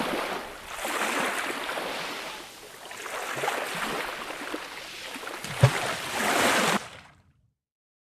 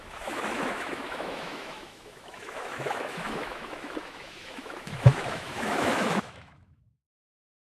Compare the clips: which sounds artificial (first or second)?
second